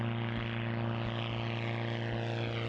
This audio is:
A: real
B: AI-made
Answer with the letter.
A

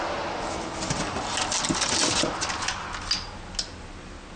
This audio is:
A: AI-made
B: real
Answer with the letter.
B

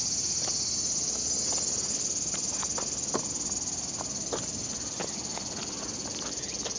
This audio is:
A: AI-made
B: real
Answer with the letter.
B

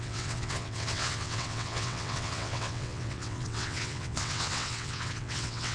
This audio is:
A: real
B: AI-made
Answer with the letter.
B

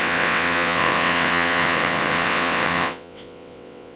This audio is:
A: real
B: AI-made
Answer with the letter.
B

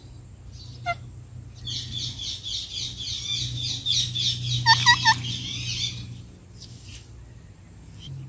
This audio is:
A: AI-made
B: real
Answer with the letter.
B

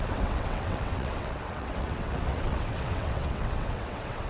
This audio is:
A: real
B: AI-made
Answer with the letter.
B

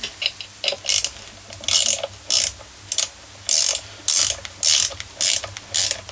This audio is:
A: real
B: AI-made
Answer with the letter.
A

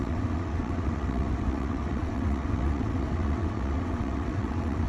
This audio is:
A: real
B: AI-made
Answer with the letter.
B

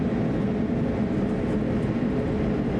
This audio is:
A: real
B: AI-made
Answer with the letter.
A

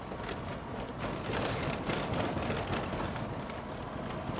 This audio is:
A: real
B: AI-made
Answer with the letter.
A